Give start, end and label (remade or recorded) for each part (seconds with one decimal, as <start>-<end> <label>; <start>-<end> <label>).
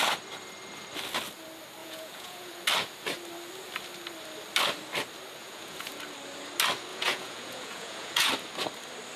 0.0-1.8 recorded; 1.8-2.5 remade; 2.5-5.4 recorded; 5.4-5.9 remade; 5.9-6.9 recorded; 6.9-8.3 remade; 8.3-9.2 recorded